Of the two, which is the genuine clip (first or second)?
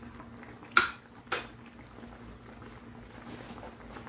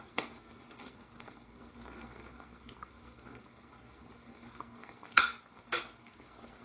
first